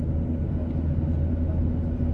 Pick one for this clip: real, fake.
real